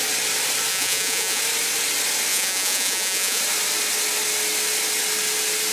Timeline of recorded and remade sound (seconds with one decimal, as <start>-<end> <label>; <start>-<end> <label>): 0.0-0.7 recorded; 0.7-1.4 remade; 1.4-2.3 recorded; 2.3-3.4 remade; 3.4-5.7 recorded